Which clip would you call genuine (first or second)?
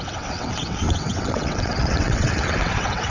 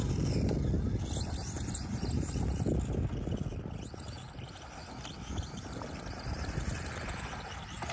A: second